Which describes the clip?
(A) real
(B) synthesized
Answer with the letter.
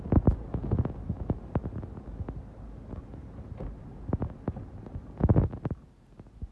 A